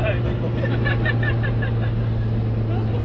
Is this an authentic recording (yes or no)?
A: yes